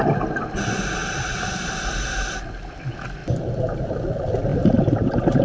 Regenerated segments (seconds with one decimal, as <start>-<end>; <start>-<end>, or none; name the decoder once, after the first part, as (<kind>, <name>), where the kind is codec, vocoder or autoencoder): 3.2-3.9 (vocoder, BigVGAN v2); 4.5-5.4